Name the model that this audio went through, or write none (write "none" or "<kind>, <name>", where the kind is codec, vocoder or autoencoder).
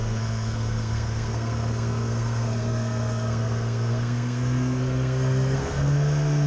codec, SNAC